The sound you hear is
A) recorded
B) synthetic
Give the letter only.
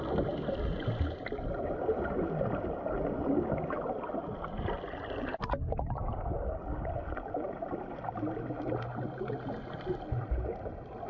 A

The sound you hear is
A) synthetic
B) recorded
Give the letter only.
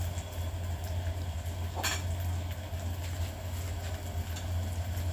B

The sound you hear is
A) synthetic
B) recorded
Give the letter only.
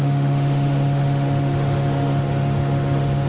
A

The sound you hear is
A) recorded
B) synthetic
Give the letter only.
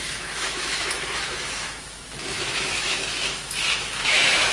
B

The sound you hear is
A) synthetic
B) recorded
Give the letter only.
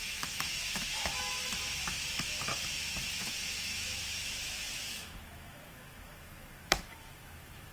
A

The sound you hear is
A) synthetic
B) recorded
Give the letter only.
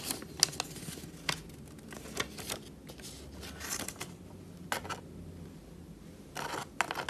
B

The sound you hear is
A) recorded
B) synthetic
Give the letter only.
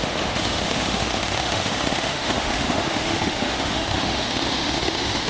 B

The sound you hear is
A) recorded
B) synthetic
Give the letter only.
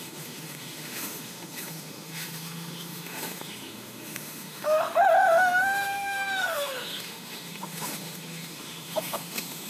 B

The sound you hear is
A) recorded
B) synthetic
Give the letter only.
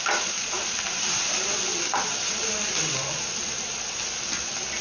A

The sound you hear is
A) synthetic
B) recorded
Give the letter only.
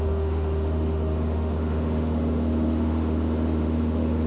A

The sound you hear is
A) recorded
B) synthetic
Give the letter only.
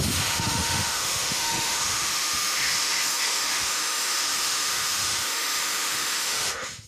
B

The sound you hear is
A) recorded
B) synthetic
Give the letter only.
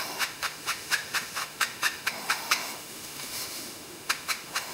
B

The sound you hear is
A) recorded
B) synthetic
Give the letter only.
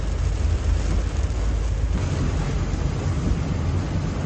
A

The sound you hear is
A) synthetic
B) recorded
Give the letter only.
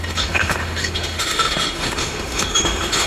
A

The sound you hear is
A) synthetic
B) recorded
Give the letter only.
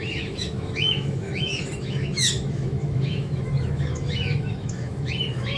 A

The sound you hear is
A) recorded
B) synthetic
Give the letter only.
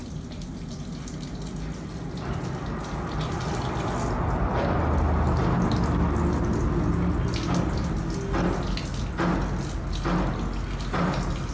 A